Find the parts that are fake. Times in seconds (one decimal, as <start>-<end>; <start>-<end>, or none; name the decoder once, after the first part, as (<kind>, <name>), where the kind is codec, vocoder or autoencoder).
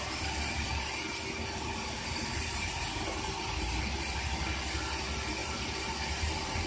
5.4-5.9 (vocoder, BigVGAN v2)